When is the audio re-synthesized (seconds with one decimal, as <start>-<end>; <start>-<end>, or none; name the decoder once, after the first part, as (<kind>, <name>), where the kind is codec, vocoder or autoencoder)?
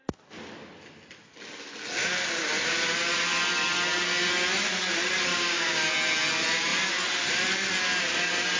5.3-5.9 (codec, DAC)